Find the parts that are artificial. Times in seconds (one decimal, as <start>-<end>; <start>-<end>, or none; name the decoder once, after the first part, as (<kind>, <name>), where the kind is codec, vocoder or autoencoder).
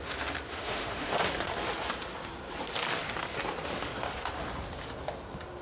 0.5-1.2 (autoencoder, DAC-VAE)